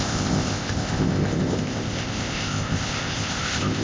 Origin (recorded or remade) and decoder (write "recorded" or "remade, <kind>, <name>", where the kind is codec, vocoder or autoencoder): remade, codec, ZipCodec